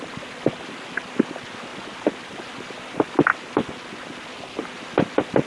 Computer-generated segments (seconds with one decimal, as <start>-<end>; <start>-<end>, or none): none